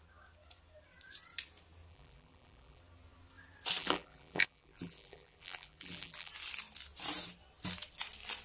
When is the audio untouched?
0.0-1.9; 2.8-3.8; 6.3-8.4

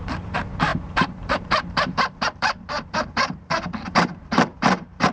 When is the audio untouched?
none

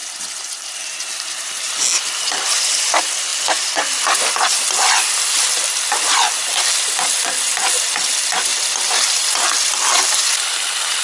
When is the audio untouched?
2.6-3.3; 4.2-8.5

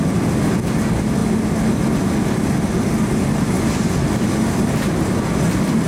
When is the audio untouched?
0.0-5.9

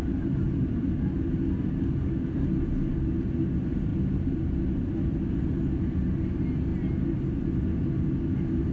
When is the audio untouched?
0.0-8.7

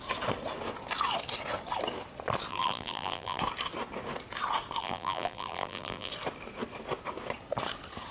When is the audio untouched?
0.0-2.5; 3.4-4.8; 6.1-8.1